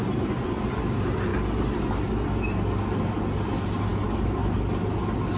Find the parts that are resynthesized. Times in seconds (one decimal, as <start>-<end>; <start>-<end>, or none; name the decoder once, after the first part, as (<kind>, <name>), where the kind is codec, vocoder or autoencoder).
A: none